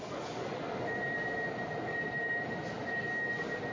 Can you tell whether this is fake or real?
real